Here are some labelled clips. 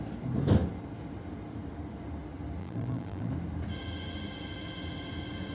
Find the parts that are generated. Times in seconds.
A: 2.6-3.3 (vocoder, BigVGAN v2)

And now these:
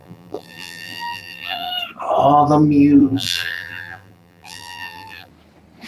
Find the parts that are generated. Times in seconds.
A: 0.0-1.7 (vocoder, BigVGAN v2); 3.0-5.3

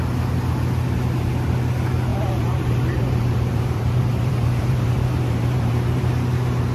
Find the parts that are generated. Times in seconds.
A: 2.1-6.1 (vocoder, BigVGAN v2)